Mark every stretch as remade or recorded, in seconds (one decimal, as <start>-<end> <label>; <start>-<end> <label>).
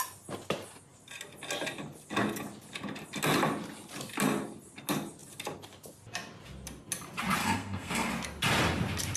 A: 0.0-7.4 recorded; 7.4-8.1 remade; 8.1-9.2 recorded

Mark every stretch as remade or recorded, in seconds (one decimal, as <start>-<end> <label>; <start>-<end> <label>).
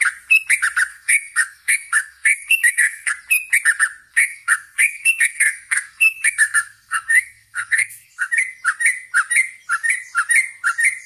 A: 0.0-0.9 recorded; 0.9-3.1 remade; 3.1-4.1 recorded; 4.1-8.3 remade; 8.3-11.1 recorded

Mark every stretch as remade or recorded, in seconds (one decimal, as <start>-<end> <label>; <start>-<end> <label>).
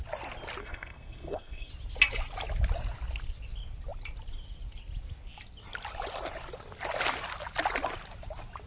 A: 0.0-0.6 recorded; 0.6-1.7 remade; 1.7-8.7 recorded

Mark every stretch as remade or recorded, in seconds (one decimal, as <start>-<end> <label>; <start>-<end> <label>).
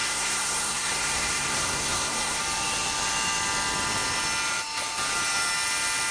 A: 0.0-2.4 remade; 2.4-6.1 recorded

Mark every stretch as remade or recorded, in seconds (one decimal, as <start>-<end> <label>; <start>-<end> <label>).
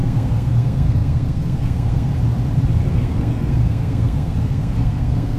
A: 0.0-2.1 remade; 2.1-2.9 recorded; 2.9-5.4 remade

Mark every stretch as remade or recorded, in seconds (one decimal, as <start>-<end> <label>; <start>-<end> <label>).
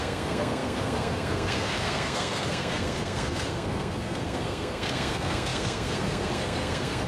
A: 0.0-7.1 remade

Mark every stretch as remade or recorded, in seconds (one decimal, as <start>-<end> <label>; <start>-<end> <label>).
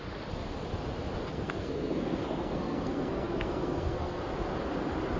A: 0.0-1.3 recorded; 1.3-4.2 remade; 4.2-5.2 recorded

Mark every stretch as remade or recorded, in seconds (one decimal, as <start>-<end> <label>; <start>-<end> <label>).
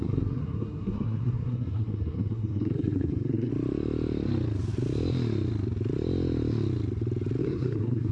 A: 0.0-3.5 remade; 3.5-7.4 recorded; 7.4-8.1 remade